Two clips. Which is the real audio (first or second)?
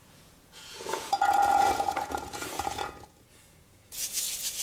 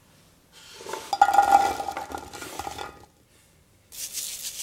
second